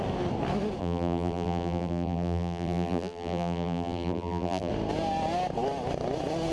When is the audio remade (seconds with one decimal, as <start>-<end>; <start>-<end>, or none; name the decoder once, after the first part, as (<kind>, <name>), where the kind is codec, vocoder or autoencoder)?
0.8-4.7 (vocoder, BigVGAN v2)